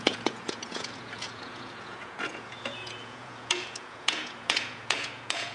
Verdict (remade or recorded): remade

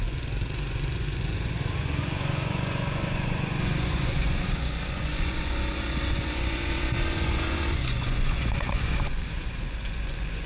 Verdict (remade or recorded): remade